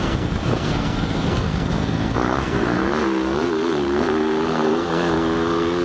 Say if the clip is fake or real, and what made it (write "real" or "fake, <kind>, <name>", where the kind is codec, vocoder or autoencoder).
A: fake, codec, SNAC